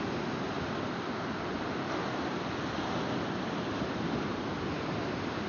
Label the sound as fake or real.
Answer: real